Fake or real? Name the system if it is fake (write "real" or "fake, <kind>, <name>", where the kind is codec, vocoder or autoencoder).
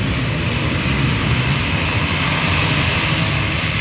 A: real